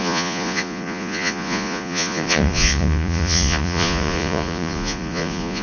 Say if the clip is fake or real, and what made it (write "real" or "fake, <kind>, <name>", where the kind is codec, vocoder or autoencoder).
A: fake, vocoder, Vocos